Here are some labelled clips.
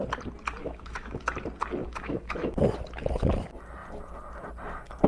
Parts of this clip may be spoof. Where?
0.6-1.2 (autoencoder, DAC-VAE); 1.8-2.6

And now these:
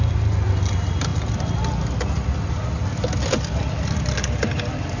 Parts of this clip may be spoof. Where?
none

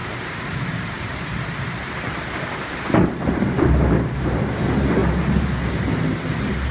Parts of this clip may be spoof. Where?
0.0-3.9 (vocoder, BigVGAN v2)

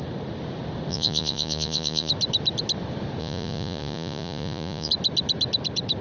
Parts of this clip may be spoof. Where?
0.9-2.1 (vocoder, Vocos); 3.2-4.9